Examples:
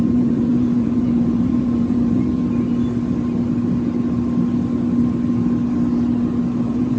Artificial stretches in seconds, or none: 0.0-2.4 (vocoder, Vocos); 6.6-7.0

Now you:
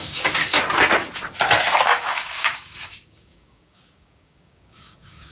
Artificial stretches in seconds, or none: 0.0-0.6 (codec, DAC); 1.9-5.3

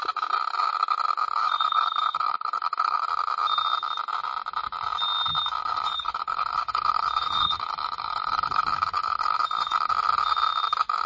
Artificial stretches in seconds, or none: 1.4-3.0 (codec, HILCodec); 5.6-9.9

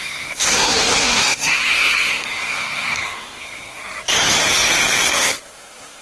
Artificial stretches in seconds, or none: 0.0-3.8 (codec, SNAC); 5.1-6.0

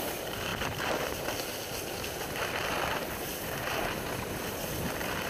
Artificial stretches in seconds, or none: none

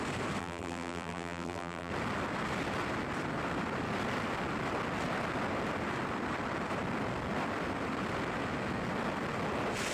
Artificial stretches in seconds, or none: 0.4-1.9 (vocoder, BigVGAN v2)